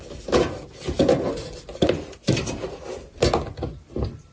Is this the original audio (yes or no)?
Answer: yes